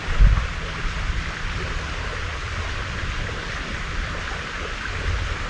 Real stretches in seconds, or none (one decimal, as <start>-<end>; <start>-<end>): 0.0-5.5